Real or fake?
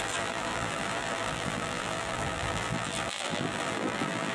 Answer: fake